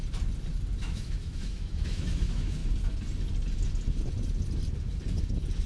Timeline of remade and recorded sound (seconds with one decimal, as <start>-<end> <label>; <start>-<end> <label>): 0.0-0.8 recorded; 0.8-2.6 remade; 2.6-5.7 recorded